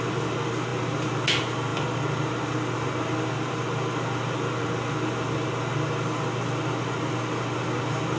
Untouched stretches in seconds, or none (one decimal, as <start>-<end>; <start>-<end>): 0.0-8.2

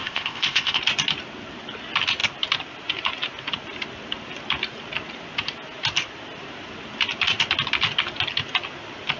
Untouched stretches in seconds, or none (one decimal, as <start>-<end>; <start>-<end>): 0.8-9.2

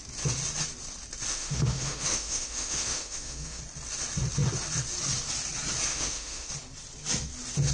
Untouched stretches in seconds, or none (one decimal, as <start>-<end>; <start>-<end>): 0.0-1.3; 3.6-5.9; 6.5-7.7

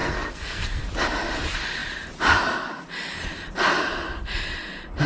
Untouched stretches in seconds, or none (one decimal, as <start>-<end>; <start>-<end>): 0.8-5.1

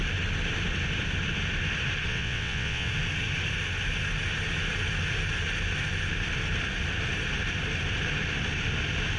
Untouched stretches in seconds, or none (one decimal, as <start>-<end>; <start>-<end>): 0.0-2.1; 2.9-9.2

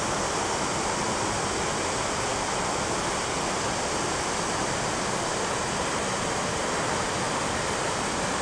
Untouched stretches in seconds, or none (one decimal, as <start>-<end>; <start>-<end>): 0.0-8.4

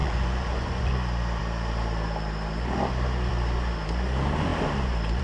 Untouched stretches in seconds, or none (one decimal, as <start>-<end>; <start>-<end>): 0.9-5.2